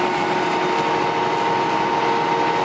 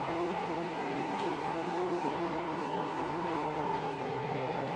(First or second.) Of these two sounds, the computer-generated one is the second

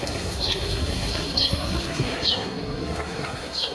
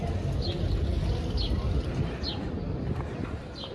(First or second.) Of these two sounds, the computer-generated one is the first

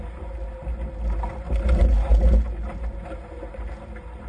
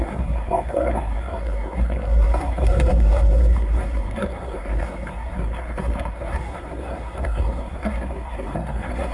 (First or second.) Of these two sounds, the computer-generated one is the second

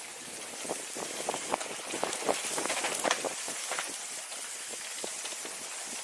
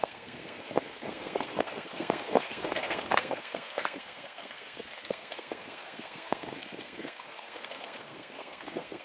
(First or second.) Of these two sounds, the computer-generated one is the second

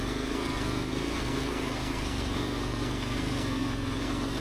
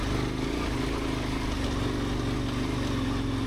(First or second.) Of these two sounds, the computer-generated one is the first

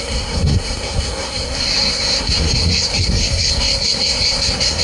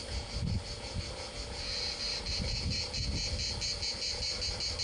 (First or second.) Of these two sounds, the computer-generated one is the first